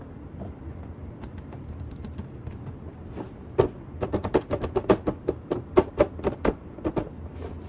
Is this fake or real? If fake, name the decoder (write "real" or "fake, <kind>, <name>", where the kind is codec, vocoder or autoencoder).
fake, vocoder, BigVGAN v2